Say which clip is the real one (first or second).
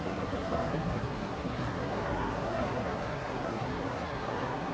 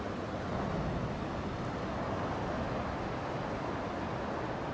second